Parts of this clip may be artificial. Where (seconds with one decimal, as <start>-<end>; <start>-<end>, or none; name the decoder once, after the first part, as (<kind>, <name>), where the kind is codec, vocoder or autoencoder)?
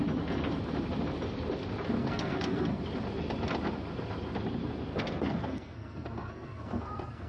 2.0-2.8 (codec, SNAC); 4.9-7.3